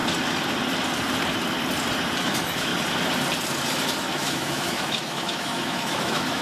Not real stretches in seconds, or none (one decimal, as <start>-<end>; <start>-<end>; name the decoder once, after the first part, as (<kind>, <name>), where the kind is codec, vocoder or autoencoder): 2.2-2.7 (autoencoder, DAC-VAE); 4.1-6.4